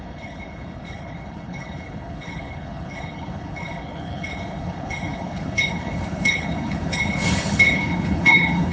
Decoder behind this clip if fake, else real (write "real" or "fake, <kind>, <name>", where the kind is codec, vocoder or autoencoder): fake, codec, HILCodec